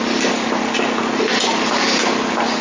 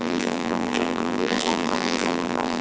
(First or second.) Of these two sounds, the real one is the first